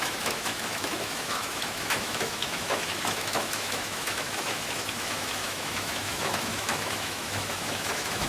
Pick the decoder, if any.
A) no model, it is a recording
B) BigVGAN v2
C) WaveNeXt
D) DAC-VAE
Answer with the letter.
D